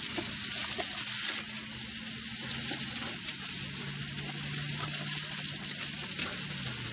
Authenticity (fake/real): real